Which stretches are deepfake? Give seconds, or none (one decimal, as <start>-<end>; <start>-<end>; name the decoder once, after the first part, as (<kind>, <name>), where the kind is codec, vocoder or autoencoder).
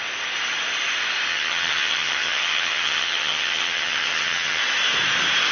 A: 1.3-4.6 (vocoder, HiFi-GAN)